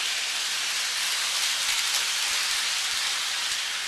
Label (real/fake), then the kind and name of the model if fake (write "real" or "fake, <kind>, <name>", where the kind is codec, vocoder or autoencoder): fake, vocoder, BigVGAN v2